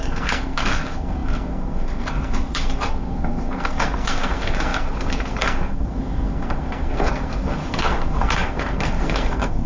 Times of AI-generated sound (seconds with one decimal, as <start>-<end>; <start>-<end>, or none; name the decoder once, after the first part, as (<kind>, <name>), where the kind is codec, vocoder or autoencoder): 0.0-9.7 (codec, SNAC)